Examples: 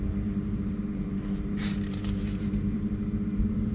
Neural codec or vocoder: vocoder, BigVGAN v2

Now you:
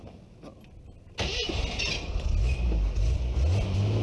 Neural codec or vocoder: none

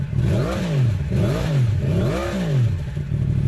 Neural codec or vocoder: none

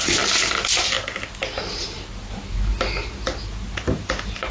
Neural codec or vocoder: none